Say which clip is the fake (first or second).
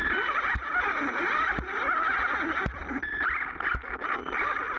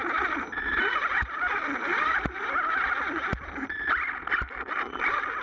second